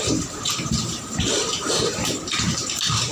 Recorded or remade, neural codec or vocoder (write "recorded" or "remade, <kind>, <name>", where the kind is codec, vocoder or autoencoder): remade, vocoder, BigVGAN v2